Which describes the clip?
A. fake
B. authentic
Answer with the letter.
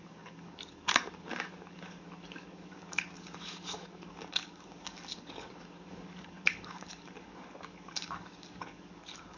A